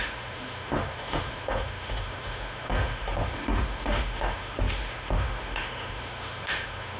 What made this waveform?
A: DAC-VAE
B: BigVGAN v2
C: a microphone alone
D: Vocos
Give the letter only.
A